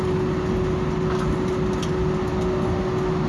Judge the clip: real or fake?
real